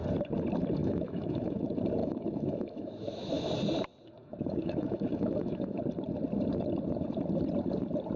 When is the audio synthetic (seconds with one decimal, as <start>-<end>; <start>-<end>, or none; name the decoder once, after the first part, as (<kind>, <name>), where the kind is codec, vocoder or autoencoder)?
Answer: 0.8-1.6 (autoencoder, DAC-VAE); 2.0-3.3; 4.2-5.8